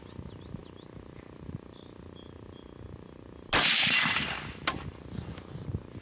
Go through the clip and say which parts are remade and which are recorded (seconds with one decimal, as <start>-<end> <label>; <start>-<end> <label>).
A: 0.0-6.0 recorded